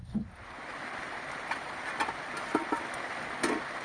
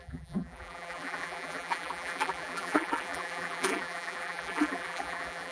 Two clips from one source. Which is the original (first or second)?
first